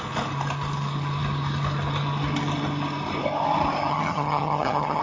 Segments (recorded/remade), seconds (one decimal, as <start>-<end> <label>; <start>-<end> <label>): 0.0-3.9 recorded; 3.9-5.0 remade